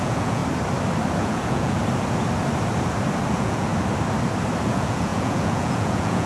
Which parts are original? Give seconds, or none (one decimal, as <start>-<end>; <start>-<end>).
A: 0.4-1.2; 1.8-3.3; 3.7-4.6